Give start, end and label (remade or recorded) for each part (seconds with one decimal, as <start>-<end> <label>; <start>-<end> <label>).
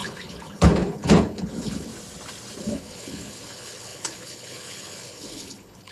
0.0-1.9 remade; 1.9-2.6 recorded; 2.6-5.9 remade